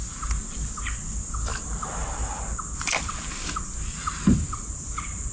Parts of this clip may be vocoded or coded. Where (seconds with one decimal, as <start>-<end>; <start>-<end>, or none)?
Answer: none